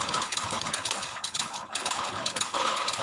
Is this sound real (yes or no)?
no